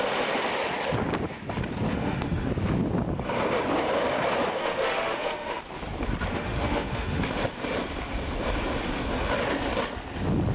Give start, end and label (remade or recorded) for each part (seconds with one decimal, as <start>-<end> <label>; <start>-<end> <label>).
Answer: 0.0-1.9 recorded; 1.9-2.5 remade; 2.5-4.6 recorded; 4.6-5.6 remade; 5.6-6.3 recorded; 6.3-7.2 remade; 7.2-10.5 recorded